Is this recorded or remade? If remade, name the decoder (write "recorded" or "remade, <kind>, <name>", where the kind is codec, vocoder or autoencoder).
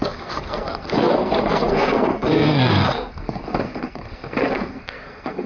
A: remade, codec, SNAC